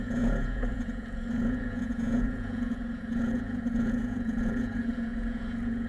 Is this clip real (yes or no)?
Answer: no